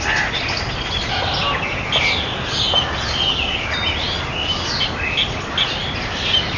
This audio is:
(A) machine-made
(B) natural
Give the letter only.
B